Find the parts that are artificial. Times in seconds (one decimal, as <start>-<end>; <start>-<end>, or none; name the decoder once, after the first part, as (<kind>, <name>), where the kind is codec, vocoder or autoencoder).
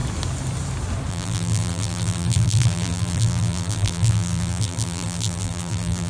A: 1.1-6.1 (vocoder, BigVGAN v2)